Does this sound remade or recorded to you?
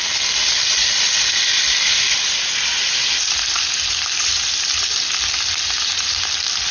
recorded